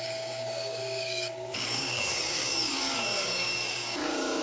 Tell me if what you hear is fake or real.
fake